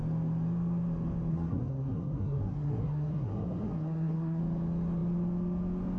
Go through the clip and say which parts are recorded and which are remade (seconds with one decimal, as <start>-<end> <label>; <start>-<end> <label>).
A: 0.0-1.3 recorded; 1.3-4.4 remade; 4.4-6.0 recorded